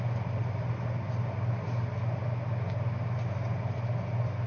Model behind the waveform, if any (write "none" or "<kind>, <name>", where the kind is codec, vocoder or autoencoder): none